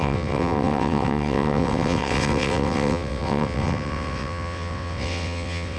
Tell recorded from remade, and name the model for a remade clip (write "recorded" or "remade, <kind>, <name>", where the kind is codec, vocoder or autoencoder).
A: remade, vocoder, WaveNeXt